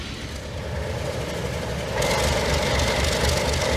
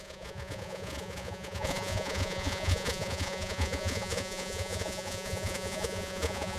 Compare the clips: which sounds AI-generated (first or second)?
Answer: second